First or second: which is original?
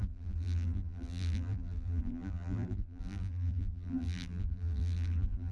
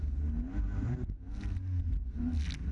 second